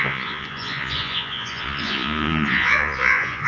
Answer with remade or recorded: remade